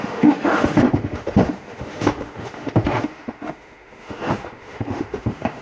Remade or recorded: remade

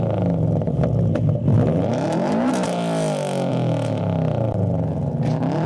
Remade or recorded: recorded